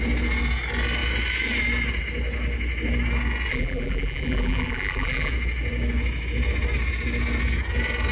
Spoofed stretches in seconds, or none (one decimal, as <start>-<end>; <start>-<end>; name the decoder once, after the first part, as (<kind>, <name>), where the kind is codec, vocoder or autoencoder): 3.5-5.3 (vocoder, BigVGAN v2)